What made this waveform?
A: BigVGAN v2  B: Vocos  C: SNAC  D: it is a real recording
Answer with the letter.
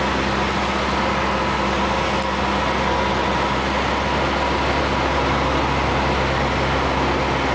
D